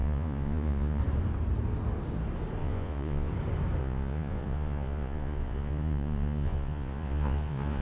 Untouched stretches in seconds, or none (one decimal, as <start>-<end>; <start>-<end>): 1.0-2.6; 3.3-3.8